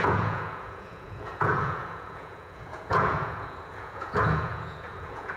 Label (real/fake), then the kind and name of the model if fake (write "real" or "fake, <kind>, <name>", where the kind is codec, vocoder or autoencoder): fake, vocoder, Vocos